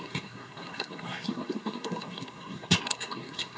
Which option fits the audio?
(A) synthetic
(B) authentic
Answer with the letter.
A